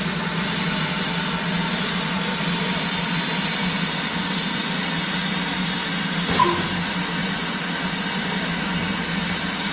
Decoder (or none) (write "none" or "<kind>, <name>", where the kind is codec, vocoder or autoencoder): none